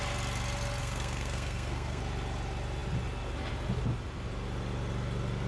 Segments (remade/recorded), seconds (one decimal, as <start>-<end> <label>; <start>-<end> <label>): 0.0-0.8 recorded; 0.8-2.0 remade; 2.0-5.5 recorded